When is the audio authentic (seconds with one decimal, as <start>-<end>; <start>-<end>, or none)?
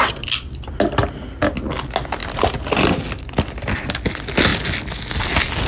0.0-5.7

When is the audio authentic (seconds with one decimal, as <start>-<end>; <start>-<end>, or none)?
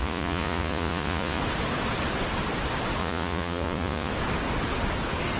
1.4-3.0; 4.1-5.4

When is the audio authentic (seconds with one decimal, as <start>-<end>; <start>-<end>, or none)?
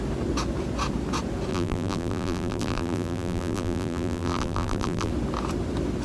0.0-1.5; 5.1-6.0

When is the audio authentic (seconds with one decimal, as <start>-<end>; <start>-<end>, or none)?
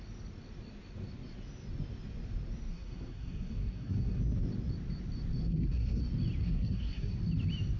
0.0-2.7; 4.2-5.4; 6.0-6.4; 7.2-7.8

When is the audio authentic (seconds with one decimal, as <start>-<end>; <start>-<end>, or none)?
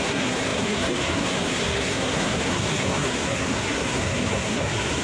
none